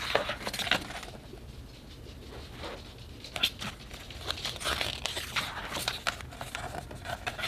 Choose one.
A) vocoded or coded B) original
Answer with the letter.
B